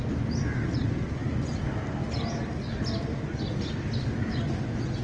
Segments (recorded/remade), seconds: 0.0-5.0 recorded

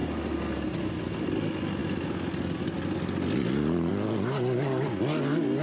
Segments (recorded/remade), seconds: 0.0-5.6 recorded

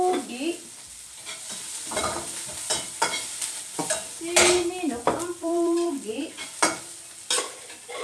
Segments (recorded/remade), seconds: 0.0-5.4 recorded; 5.4-6.1 remade; 6.1-8.0 recorded

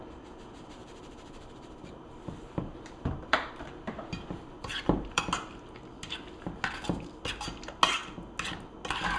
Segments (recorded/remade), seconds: 0.0-0.8 recorded; 0.8-5.2 remade; 5.2-9.2 recorded

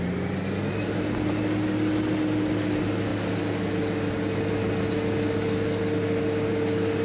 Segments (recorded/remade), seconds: 0.0-7.0 recorded

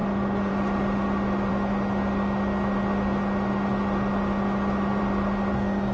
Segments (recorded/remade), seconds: 0.0-5.9 recorded

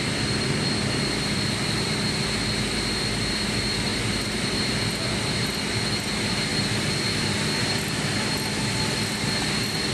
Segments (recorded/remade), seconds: 0.0-9.9 recorded